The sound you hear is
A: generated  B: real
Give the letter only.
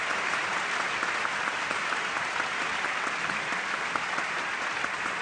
B